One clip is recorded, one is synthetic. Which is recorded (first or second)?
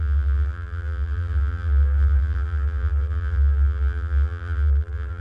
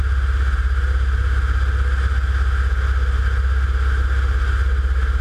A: second